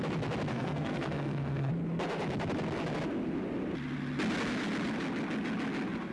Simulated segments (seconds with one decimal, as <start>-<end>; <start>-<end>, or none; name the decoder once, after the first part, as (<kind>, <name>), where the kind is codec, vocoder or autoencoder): 0.5-1.7 (codec, SNAC)